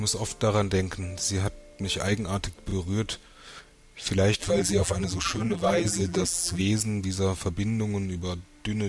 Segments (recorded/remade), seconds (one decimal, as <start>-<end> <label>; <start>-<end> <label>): 0.0-4.4 recorded; 4.4-6.6 remade; 6.6-8.9 recorded